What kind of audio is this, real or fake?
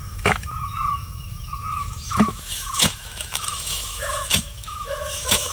fake